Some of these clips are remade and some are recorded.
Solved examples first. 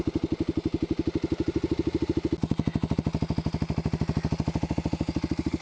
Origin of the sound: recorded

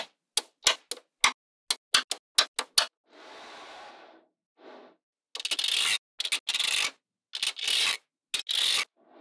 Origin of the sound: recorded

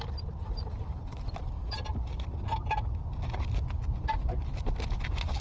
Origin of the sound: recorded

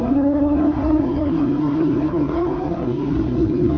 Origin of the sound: remade